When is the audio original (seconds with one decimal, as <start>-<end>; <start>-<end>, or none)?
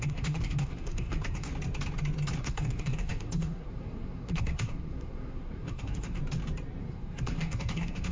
1.5-2.4; 6.2-6.8